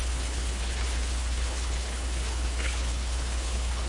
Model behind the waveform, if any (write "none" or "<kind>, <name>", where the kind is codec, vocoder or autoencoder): codec, HILCodec